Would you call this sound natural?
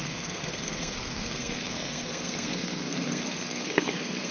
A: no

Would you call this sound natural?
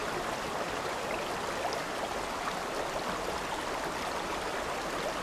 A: yes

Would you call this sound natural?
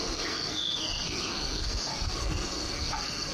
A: no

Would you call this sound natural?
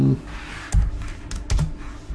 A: yes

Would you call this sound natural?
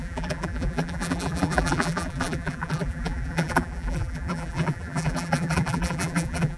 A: no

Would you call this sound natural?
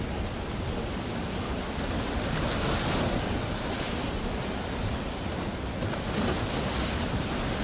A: yes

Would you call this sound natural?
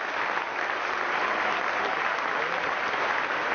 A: yes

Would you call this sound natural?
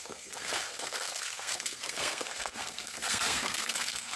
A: no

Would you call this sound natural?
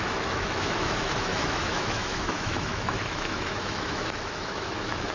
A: no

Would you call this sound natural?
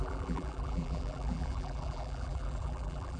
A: no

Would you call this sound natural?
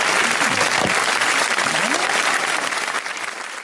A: yes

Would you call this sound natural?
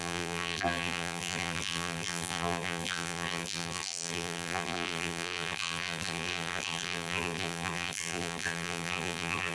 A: no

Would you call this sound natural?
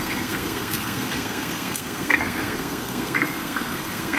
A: no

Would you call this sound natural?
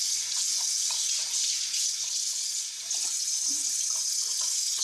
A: no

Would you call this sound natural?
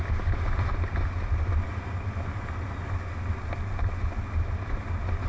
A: yes